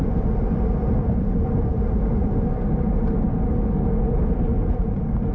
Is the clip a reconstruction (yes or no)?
no